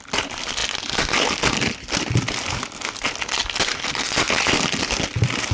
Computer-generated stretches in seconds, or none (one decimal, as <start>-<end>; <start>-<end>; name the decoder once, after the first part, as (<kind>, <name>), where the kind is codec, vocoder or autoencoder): none